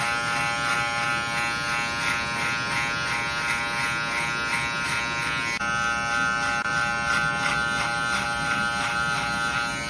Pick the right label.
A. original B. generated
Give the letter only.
A